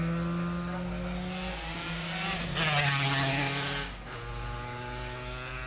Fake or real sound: real